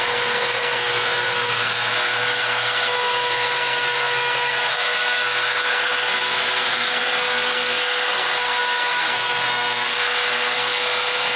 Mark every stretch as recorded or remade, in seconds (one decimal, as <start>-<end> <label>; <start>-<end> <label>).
0.0-11.4 remade